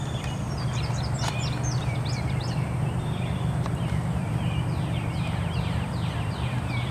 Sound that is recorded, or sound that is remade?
remade